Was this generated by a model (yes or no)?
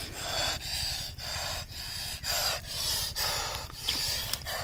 no